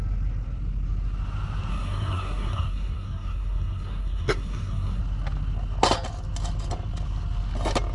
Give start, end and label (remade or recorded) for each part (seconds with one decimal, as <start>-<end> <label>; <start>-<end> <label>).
0.0-1.7 recorded; 1.7-5.0 remade; 5.0-7.9 recorded